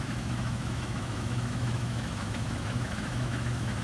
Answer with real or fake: fake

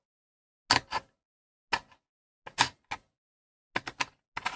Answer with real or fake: real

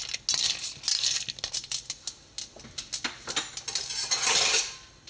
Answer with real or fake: real